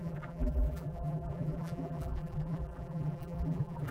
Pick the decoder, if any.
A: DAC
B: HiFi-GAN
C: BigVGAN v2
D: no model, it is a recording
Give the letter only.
C